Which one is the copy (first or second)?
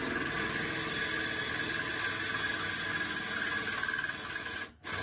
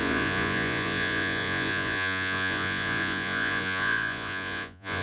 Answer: second